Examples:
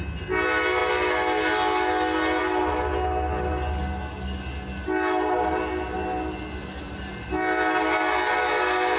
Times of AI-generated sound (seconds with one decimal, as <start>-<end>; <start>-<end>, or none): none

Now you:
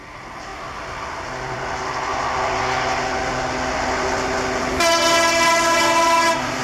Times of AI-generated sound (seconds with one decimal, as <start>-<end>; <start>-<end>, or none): none

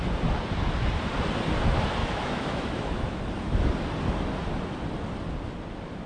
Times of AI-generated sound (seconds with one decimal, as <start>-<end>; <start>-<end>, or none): 2.0-3.2

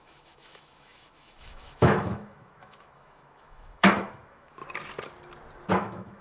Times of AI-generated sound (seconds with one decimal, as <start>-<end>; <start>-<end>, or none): 0.0-4.6; 5.7-6.2

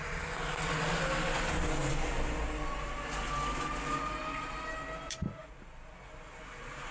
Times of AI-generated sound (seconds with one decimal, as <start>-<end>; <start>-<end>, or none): none

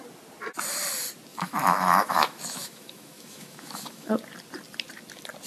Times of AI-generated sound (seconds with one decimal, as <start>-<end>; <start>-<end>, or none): 1.3-4.1

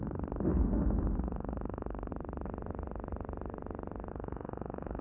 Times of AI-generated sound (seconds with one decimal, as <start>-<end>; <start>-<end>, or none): 0.0-2.1; 4.1-5.0